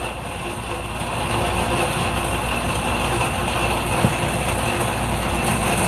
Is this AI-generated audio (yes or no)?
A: no